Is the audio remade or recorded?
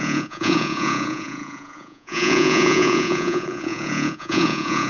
remade